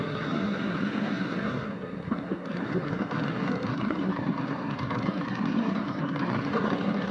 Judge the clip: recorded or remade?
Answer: remade